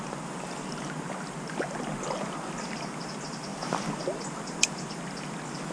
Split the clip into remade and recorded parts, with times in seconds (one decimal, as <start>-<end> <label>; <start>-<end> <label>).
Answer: 0.0-5.7 recorded